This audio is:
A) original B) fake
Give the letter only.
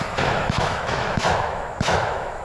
B